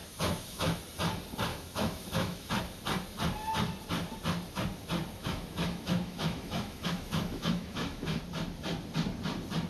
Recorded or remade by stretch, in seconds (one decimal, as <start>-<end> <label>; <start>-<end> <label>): 0.0-0.8 remade; 0.8-1.5 recorded; 1.5-2.5 remade; 2.5-5.2 recorded; 5.2-8.2 remade; 8.2-9.7 recorded